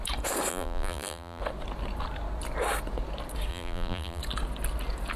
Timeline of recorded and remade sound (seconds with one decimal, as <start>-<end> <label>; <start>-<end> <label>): 0.0-0.5 recorded; 0.5-1.4 remade; 1.4-3.5 recorded; 3.5-4.2 remade; 4.2-5.2 recorded

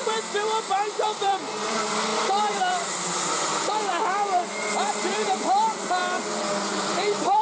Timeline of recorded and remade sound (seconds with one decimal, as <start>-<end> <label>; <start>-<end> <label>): 0.0-6.0 remade; 6.0-6.7 recorded; 6.7-7.4 remade